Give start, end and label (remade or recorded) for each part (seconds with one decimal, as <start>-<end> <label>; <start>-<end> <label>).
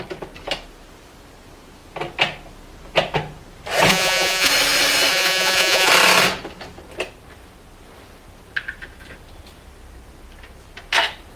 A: 0.0-3.9 recorded; 3.9-4.5 remade; 4.5-5.1 recorded; 5.1-5.9 remade; 5.9-11.4 recorded